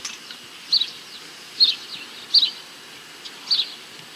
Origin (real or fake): real